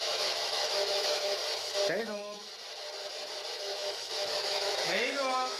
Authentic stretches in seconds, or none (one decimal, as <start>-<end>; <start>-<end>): 1.4-2.0; 2.5-3.5